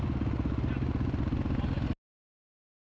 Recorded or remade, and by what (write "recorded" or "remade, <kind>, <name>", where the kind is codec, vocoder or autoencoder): recorded